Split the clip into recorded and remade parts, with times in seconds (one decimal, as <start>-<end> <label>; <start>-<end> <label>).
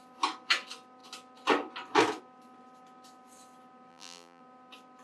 0.0-3.9 recorded; 3.9-4.4 remade; 4.4-5.0 recorded